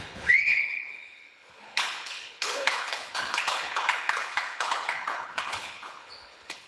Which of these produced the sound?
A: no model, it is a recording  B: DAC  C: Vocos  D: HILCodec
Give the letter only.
D